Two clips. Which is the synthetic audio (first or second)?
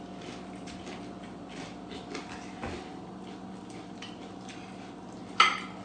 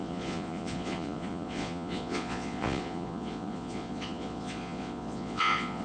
second